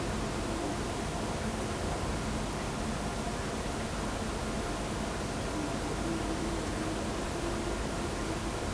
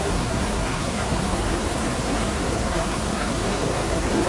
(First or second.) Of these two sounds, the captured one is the first